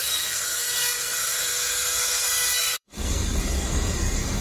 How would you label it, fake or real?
fake